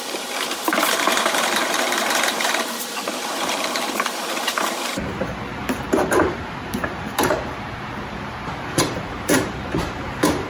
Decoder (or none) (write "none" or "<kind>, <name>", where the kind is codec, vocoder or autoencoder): vocoder, BigVGAN v2